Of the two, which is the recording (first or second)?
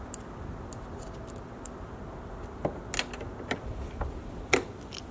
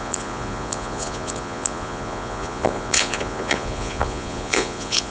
first